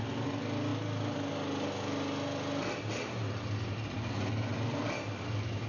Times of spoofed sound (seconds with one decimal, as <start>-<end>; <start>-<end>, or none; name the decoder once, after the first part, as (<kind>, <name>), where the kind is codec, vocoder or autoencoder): none